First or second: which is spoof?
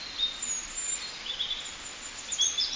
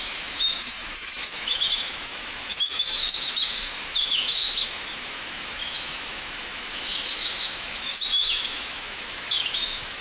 second